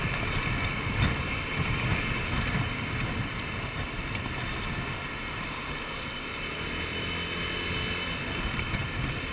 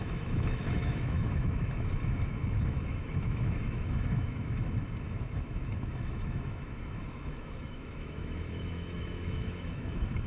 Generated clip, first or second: second